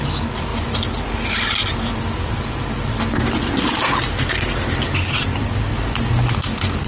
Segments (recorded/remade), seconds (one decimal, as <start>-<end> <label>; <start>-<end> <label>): 0.0-0.5 remade; 0.5-1.9 recorded; 1.9-5.7 remade; 5.7-6.3 recorded; 6.3-6.9 remade